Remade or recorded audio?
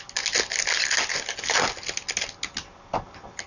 recorded